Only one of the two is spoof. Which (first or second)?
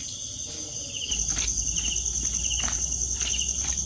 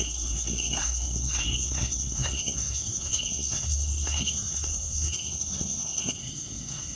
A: second